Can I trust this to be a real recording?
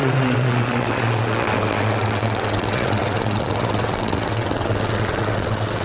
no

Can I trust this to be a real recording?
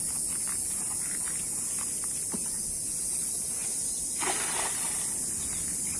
yes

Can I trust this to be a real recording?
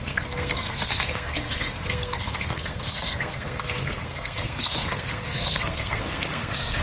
no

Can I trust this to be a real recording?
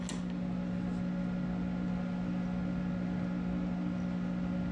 yes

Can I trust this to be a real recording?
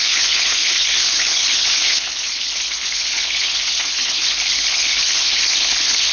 no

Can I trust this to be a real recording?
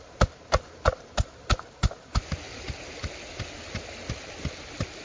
yes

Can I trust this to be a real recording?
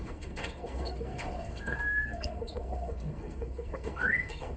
no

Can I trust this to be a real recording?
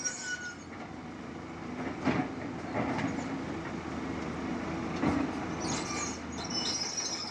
yes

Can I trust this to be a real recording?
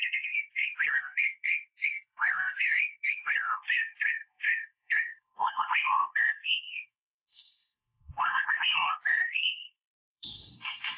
no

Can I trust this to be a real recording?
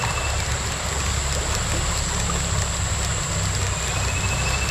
yes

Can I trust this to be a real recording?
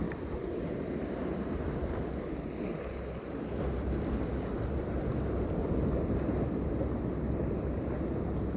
yes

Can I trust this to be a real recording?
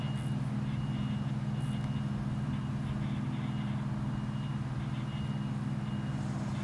yes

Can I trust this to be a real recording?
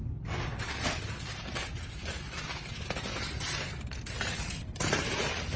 yes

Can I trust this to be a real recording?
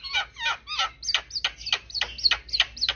yes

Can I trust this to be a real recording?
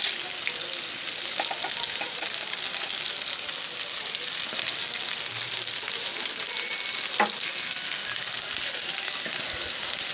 yes